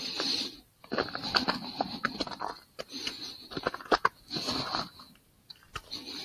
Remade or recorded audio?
recorded